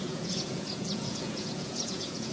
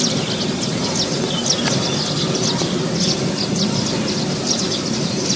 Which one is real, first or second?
second